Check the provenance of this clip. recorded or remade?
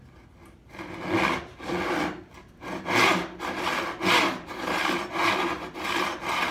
recorded